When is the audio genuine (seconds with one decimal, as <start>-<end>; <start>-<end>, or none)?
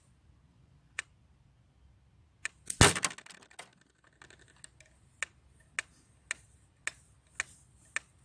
0.0-0.5; 1.0-8.2